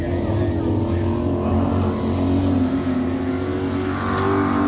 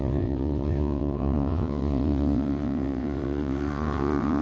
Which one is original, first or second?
first